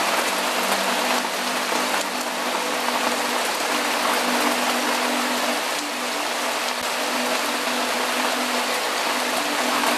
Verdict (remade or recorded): recorded